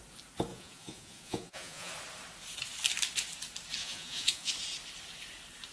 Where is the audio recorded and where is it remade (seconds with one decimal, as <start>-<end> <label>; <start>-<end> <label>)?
0.0-0.5 recorded; 0.5-1.9 remade; 1.9-3.8 recorded; 3.8-4.5 remade; 4.5-5.7 recorded